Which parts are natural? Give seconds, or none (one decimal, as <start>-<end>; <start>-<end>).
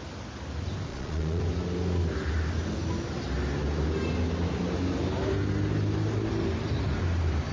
0.0-0.9; 1.4-7.5